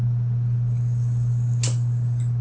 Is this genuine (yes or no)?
yes